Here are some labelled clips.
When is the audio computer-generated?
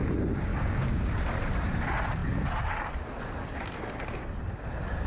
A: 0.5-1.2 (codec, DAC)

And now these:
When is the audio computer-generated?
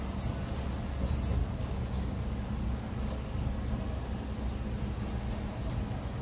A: 1.4-3.7 (codec, DAC)